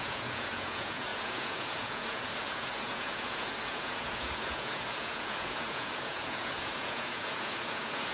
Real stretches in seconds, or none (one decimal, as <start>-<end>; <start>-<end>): none